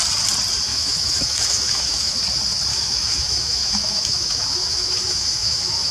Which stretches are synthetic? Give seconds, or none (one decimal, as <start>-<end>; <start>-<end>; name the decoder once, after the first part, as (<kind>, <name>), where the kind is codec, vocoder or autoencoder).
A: 0.7-2.2 (autoencoder, DAC-VAE); 2.7-5.9